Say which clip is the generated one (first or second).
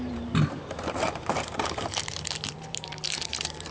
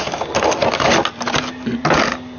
first